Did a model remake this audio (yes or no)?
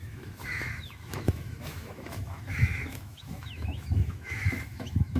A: yes